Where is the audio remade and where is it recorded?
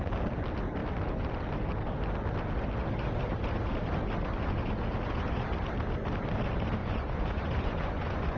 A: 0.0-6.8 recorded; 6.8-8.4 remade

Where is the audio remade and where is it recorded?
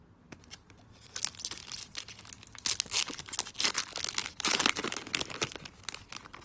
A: 0.0-4.2 recorded; 4.2-4.9 remade; 4.9-6.4 recorded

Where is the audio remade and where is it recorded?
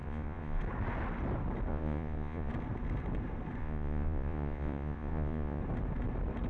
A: 0.0-0.6 remade; 0.6-1.7 recorded; 1.7-2.5 remade; 2.5-3.6 recorded; 3.6-5.6 remade; 5.6-6.5 recorded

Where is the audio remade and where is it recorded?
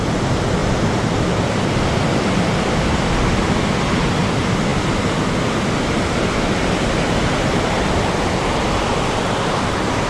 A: 0.0-10.1 recorded